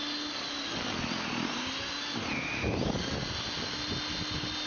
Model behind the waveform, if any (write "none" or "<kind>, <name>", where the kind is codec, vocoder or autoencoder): none